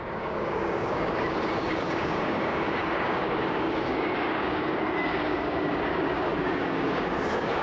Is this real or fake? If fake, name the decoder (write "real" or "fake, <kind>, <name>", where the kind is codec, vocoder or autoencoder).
fake, codec, DAC